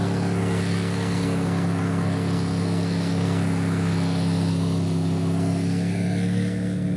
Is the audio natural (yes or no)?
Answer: no